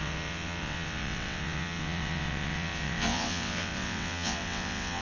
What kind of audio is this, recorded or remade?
remade